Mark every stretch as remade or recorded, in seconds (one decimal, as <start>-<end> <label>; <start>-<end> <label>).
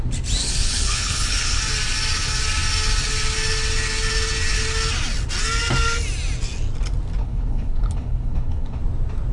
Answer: 0.0-0.4 recorded; 0.4-1.6 remade; 1.6-7.2 recorded; 7.2-8.8 remade; 8.8-9.3 recorded